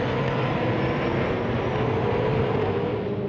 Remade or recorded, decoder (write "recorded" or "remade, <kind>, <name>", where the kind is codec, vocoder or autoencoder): recorded